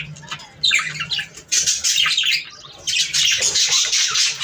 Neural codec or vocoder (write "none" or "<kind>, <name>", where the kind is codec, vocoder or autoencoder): none